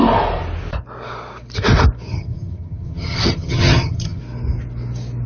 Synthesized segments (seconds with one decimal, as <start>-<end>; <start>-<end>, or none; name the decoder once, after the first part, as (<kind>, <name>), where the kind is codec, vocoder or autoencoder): 2.1-4.2 (vocoder, HiFi-GAN)